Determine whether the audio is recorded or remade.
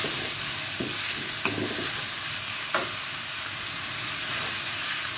recorded